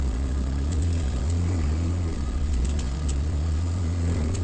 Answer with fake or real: fake